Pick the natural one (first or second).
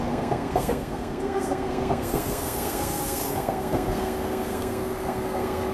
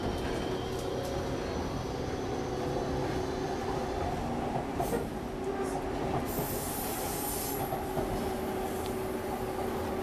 second